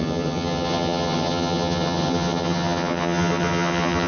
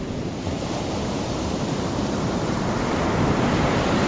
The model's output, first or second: first